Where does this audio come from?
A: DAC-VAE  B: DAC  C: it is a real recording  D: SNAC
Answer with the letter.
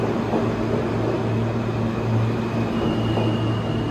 C